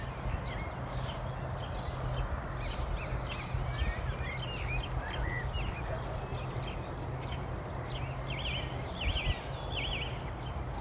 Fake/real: real